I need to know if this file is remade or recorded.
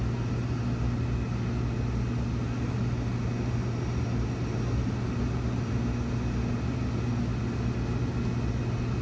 recorded